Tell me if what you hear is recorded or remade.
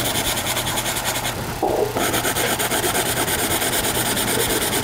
recorded